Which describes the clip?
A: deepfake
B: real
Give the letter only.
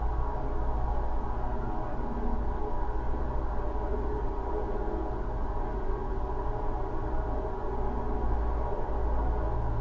B